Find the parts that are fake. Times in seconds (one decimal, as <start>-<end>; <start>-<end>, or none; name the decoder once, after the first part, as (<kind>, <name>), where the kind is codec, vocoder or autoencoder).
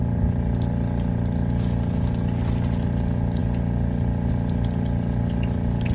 none